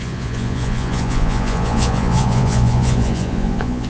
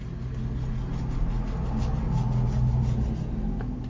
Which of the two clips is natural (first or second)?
second